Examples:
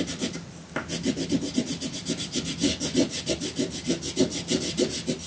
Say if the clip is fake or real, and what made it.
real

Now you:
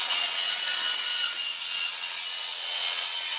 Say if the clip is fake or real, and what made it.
fake, vocoder, WaveNeXt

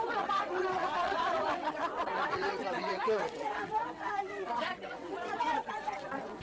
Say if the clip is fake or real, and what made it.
fake, vocoder, WaveNeXt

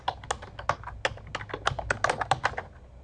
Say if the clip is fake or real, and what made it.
real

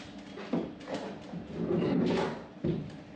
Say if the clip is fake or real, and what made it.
real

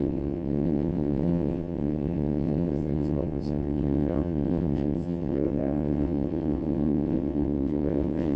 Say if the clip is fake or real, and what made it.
fake, vocoder, WaveNeXt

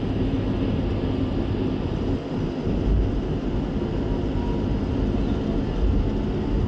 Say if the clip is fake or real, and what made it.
real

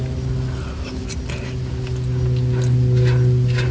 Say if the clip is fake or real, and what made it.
real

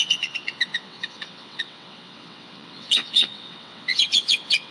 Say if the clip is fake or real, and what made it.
fake, vocoder, WaveNeXt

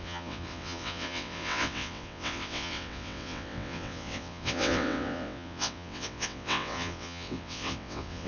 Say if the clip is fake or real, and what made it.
fake, vocoder, WaveNeXt